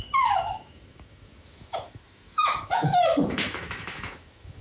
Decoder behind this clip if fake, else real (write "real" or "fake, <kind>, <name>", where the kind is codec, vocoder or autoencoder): fake, autoencoder, DAC-VAE